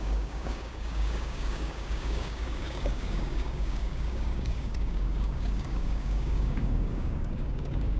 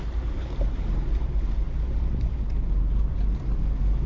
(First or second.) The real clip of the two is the second